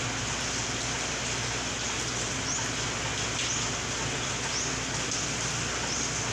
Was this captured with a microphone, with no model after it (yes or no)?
yes